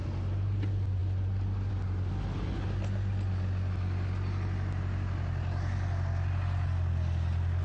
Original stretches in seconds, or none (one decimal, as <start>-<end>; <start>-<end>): 0.0-7.6